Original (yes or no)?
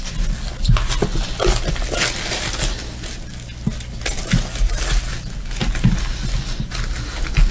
yes